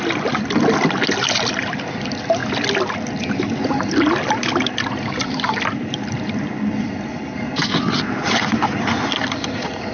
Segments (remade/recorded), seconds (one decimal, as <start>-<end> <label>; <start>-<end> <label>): 0.0-9.9 recorded